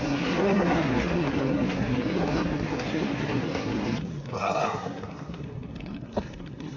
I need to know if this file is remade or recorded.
remade